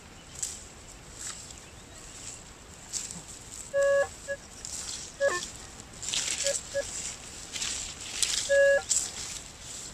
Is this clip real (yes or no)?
yes